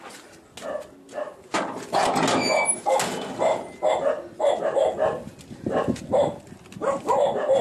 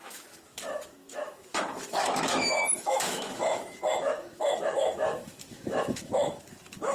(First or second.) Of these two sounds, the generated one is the second